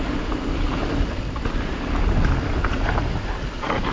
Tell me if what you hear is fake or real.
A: real